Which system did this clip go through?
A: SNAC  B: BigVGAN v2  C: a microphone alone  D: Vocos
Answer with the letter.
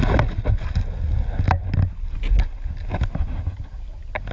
C